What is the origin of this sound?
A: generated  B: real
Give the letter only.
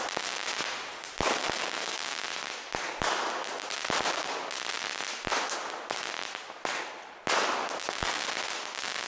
B